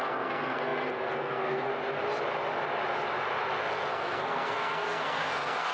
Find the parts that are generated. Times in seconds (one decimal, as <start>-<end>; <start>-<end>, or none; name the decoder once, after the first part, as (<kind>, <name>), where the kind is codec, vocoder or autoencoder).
0.0-1.7 (codec, SNAC); 3.9-5.7